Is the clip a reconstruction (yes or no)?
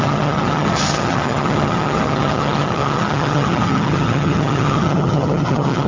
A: yes